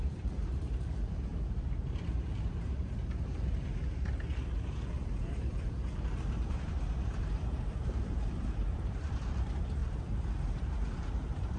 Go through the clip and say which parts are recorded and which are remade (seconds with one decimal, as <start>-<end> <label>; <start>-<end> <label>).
0.0-11.6 remade

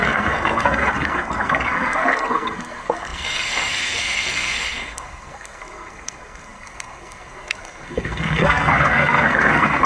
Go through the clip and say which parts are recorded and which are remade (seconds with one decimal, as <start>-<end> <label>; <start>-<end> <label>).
0.0-9.9 remade

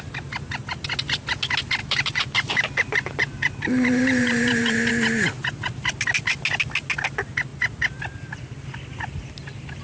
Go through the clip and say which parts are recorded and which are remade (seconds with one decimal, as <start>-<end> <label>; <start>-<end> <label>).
0.0-1.8 recorded; 1.8-4.9 remade; 4.9-9.8 recorded

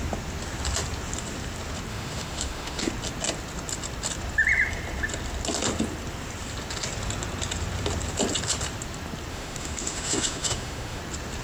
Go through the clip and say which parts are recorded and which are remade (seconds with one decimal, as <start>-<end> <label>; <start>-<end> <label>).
0.0-1.9 recorded; 1.9-2.9 remade; 2.9-9.3 recorded; 9.3-11.0 remade; 11.0-11.4 recorded

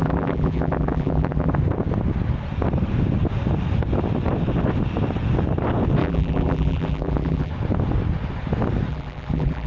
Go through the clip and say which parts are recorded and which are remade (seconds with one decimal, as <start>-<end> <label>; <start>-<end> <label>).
0.0-1.5 remade; 1.5-6.0 recorded; 6.0-7.5 remade; 7.5-8.9 recorded; 8.9-9.7 remade

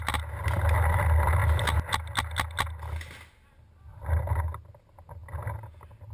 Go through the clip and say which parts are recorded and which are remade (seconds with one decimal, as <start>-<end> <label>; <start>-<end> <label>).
0.0-6.1 recorded

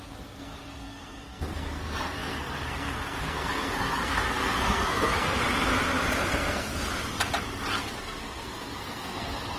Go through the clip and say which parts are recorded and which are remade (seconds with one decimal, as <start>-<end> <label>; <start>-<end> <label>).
0.0-5.7 remade; 5.7-6.2 recorded; 6.2-6.7 remade; 6.7-7.8 recorded; 7.8-9.6 remade